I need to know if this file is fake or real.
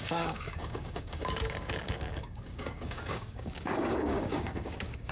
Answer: fake